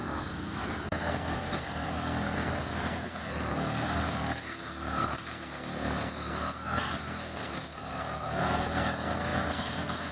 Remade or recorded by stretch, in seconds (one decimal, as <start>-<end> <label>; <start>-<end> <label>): 0.0-10.1 remade